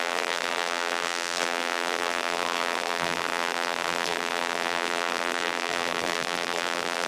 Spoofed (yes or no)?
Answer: yes